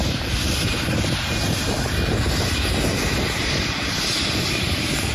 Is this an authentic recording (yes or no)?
no